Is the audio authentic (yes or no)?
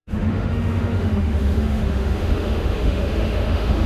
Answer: no